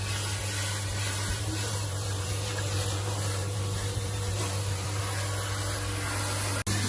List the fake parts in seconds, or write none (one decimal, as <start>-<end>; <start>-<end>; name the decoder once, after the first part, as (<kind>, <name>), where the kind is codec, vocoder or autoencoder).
0.9-5.0 (vocoder, BigVGAN v2)